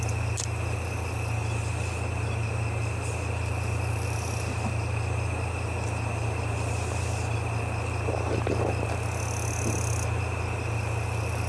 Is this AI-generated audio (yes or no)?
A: no